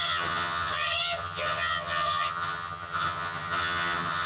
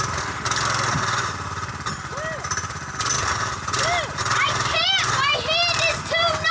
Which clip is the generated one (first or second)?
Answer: first